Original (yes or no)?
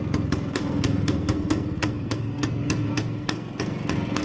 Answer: no